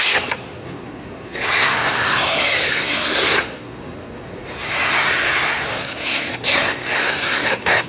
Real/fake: fake